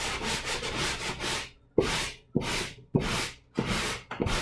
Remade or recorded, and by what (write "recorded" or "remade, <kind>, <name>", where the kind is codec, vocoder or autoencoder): recorded